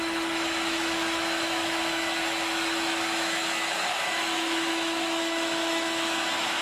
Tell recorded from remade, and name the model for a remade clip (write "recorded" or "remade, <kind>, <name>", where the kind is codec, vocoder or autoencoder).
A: remade, autoencoder, DAC-VAE